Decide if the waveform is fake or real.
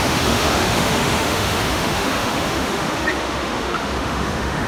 fake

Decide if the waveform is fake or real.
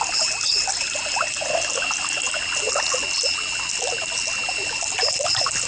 real